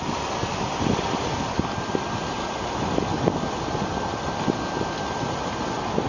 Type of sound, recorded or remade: recorded